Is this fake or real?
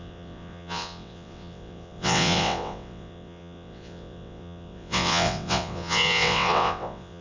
fake